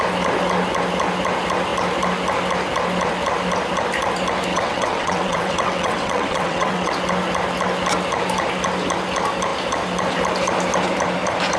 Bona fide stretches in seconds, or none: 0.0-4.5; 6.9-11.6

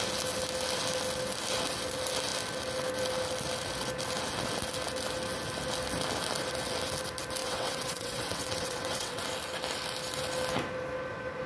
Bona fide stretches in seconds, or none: 0.0-7.4; 9.2-11.5

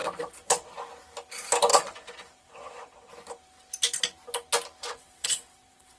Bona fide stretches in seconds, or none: 0.7-1.7; 3.1-4.8

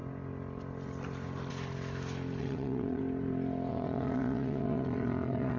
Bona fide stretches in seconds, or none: 0.0-2.4; 3.0-3.7

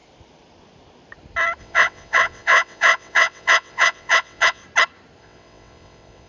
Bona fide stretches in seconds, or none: 0.0-1.6; 4.6-5.2

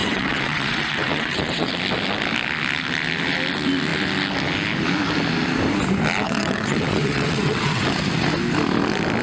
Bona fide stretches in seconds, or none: 1.7-6.2; 7.9-9.2

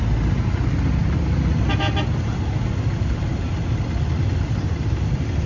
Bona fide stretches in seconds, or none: 0.0-5.5